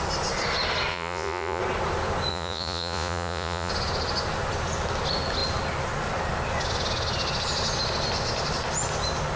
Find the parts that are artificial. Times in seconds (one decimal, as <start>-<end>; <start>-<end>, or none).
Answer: 0.9-1.6; 2.3-3.7